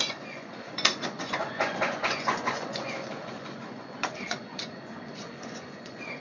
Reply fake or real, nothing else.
fake